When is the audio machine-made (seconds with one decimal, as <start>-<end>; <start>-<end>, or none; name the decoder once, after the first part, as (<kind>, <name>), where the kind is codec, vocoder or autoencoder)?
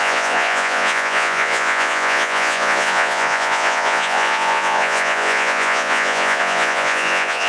0.0-7.5 (vocoder, Vocos)